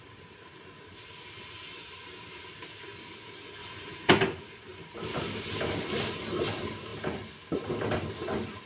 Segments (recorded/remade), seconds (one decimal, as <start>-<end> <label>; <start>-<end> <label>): 0.0-3.6 recorded; 3.6-4.1 remade; 4.1-4.7 recorded; 4.7-5.2 remade; 5.2-8.7 recorded